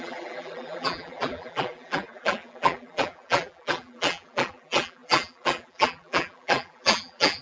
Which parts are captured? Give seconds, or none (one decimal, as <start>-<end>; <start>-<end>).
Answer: none